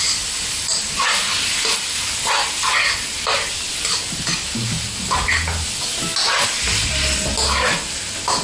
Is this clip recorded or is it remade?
recorded